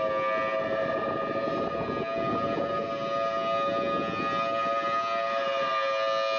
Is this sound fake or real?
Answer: real